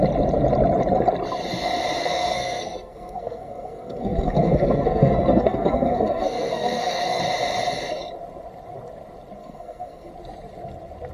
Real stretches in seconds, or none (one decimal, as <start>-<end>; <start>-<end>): 0.0-2.0; 7.2-9.4; 10.1-11.1